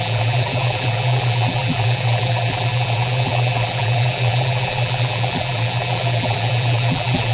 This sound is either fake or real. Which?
fake